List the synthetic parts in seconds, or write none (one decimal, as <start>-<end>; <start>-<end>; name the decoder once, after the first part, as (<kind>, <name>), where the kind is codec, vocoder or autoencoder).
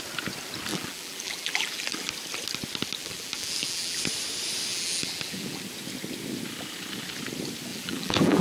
0.7-2.1 (vocoder, BigVGAN v2); 3.0-4.0; 4.7-5.6; 7.7-8.4